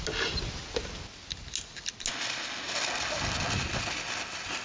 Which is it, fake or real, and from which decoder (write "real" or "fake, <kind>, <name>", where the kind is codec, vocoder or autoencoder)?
real